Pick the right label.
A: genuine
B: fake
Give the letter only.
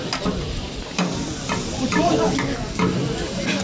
A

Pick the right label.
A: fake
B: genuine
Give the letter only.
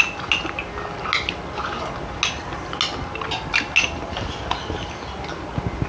B